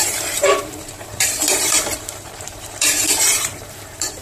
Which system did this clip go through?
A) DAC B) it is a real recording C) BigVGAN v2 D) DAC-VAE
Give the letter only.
C